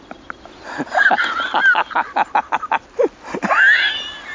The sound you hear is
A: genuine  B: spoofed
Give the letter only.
A